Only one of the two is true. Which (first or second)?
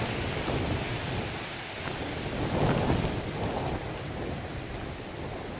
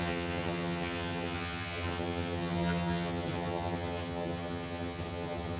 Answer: first